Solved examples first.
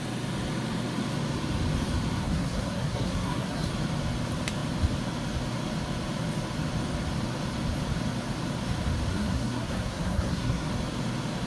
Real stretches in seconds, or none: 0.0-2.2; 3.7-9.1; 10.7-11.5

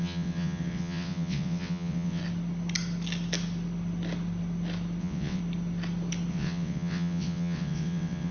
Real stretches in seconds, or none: 2.2-5.0; 5.4-6.3

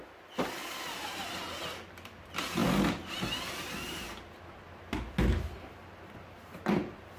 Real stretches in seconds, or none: 0.0-7.2

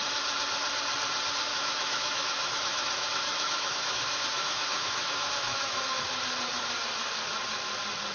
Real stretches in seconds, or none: 0.0-1.5; 6.0-8.1

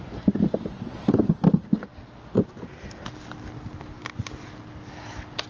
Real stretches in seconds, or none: 0.0-5.5